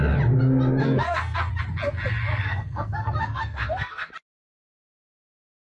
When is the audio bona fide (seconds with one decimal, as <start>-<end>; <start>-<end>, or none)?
0.0-0.8; 1.5-2.3; 4.1-5.7